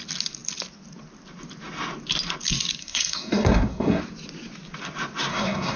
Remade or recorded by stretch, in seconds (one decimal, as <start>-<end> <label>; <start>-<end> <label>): 0.0-2.8 recorded; 2.8-4.0 remade; 4.0-5.3 recorded; 5.3-5.8 remade